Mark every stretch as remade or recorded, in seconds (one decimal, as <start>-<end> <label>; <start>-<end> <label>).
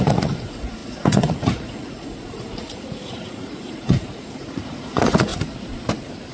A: 0.0-5.3 remade; 5.3-6.3 recorded